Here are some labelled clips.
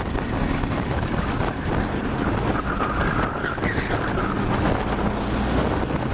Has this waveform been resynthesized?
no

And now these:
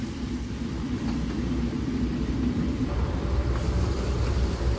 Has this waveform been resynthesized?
yes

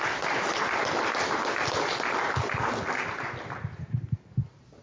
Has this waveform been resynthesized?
no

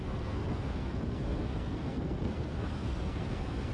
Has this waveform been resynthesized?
yes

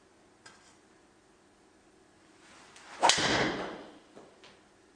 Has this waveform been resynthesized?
no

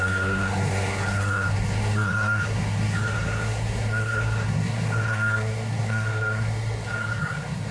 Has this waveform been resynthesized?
yes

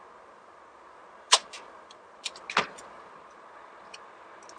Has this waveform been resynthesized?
no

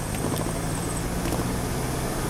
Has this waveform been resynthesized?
no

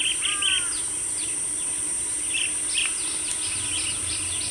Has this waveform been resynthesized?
no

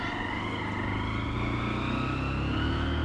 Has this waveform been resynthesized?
no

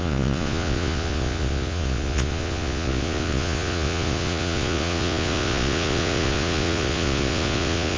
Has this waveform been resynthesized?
yes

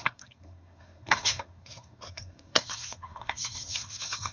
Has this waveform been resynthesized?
yes